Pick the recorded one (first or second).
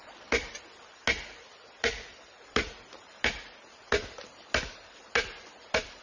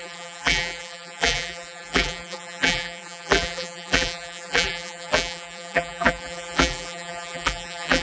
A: first